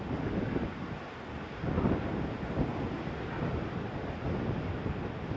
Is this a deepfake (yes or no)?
no